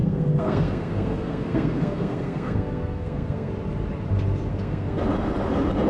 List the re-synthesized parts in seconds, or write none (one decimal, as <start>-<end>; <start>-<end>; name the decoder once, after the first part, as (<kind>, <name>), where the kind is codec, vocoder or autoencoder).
0.0-3.5 (codec, SNAC); 4.5-5.0